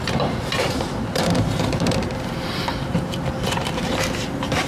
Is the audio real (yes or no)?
no